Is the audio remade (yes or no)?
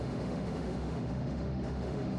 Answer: yes